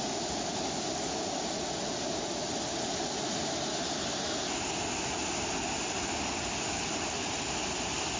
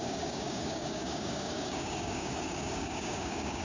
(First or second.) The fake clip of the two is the second